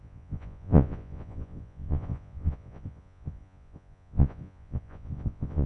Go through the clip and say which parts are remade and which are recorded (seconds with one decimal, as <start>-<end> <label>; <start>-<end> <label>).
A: 0.0-5.7 remade